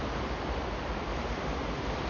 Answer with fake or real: real